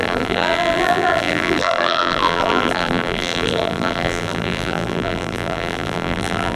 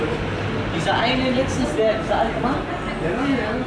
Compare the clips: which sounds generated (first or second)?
first